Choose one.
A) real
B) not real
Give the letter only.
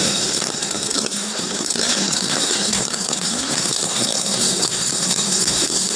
B